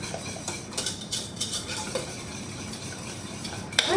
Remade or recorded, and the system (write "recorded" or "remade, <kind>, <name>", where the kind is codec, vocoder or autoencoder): remade, vocoder, BigVGAN v2